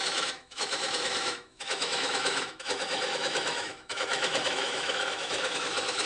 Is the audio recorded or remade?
remade